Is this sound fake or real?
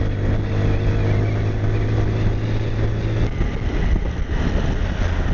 real